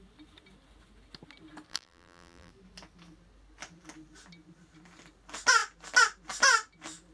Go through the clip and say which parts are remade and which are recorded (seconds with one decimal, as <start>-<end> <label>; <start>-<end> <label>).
0.0-1.7 recorded; 1.7-2.5 remade; 2.5-7.1 recorded